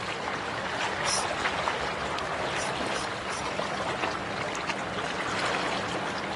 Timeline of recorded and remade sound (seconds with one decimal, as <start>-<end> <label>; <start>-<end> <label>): 0.0-2.0 recorded; 2.0-4.2 remade; 4.2-6.4 recorded

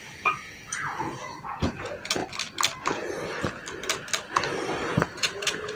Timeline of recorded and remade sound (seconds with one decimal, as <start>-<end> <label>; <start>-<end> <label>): 0.0-2.2 remade; 2.2-4.9 recorded; 4.9-5.8 remade

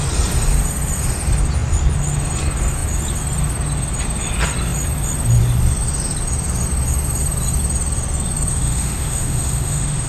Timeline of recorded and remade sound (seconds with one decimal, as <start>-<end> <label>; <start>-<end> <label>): 0.0-8.5 recorded; 8.5-10.1 remade